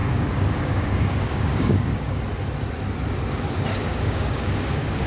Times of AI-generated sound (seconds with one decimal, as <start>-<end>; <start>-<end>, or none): 0.0-2.2; 3.8-5.1